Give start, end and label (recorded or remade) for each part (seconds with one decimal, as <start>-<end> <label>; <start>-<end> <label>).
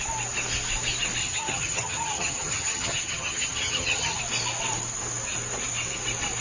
0.0-1.2 recorded; 1.2-4.2 remade; 4.2-6.4 recorded